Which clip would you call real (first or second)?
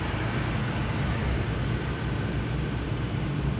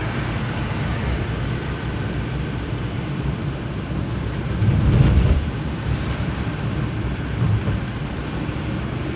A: first